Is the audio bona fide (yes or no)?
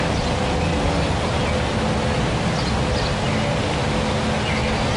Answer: yes